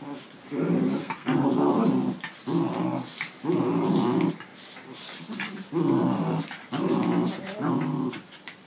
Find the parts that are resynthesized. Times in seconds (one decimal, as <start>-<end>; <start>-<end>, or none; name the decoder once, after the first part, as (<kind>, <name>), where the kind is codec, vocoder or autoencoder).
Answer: 1.0-1.5 (codec, SNAC)